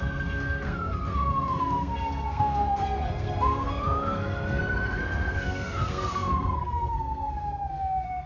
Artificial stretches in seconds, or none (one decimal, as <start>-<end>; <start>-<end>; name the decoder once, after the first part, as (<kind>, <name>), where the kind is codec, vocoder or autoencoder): 0.0-8.3 (codec, SNAC)

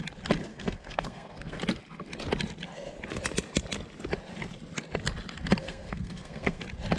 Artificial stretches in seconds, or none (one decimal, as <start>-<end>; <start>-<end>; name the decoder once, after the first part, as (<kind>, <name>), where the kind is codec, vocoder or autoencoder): 0.5-1.6 (codec, SNAC); 5.6-6.6

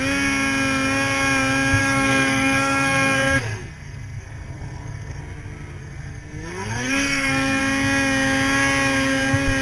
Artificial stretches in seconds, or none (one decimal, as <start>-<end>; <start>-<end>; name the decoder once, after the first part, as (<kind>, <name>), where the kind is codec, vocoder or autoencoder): 1.8-5.2 (codec, SNAC); 5.8-7.6